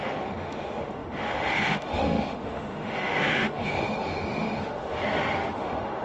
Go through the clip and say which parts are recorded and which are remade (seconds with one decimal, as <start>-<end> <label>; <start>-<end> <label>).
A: 0.0-5.0 remade; 5.0-5.6 recorded; 5.6-6.0 remade